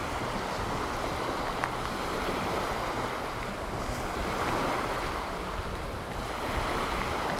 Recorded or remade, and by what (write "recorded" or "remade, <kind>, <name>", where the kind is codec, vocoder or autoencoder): recorded